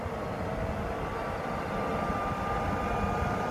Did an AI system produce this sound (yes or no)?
no